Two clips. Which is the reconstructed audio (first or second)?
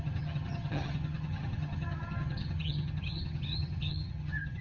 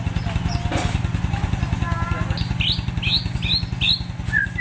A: first